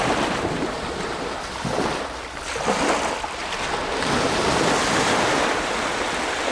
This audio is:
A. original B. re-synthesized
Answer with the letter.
A